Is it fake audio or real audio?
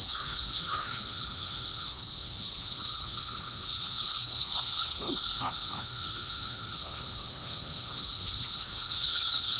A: fake